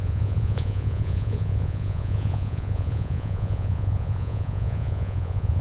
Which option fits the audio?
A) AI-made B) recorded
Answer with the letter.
A